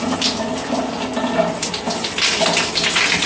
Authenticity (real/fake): real